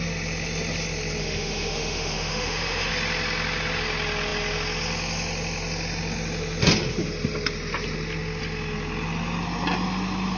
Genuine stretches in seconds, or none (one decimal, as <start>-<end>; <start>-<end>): 0.0-1.2; 2.9-10.4